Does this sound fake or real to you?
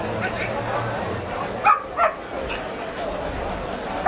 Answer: real